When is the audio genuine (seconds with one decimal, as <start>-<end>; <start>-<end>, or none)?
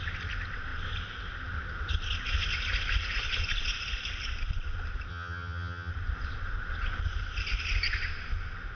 0.0-5.1; 5.9-8.7